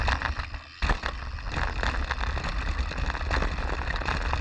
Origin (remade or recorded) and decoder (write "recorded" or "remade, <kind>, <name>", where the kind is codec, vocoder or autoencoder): recorded